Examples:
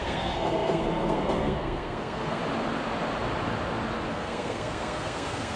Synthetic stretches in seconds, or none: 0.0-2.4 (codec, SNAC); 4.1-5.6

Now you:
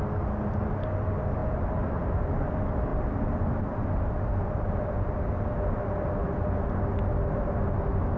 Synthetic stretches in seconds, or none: none

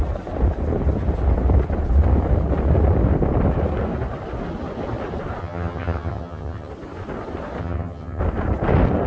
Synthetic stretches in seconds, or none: 5.4-6.7 (vocoder, HiFi-GAN); 7.6-8.2

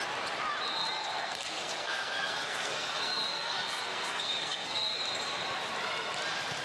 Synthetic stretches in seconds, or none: 1.0-5.0 (codec, SNAC)